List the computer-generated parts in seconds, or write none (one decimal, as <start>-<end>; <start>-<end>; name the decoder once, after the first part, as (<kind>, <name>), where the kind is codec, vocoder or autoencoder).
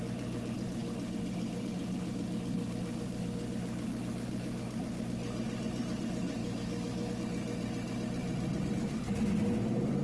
6.4-7.1 (autoencoder, DAC-VAE)